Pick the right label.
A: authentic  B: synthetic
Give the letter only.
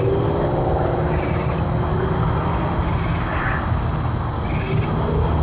A